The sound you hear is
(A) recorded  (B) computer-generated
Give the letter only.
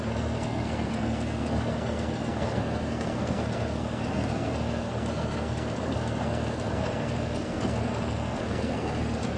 B